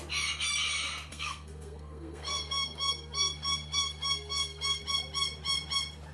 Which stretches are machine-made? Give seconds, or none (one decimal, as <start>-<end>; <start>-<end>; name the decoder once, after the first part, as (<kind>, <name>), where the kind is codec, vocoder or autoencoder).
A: 1.1-4.8 (codec, SNAC)